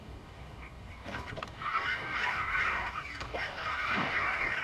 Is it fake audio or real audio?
fake